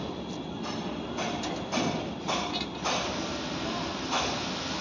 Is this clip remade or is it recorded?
recorded